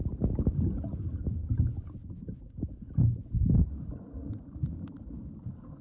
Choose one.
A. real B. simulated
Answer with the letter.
A